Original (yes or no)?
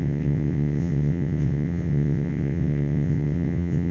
no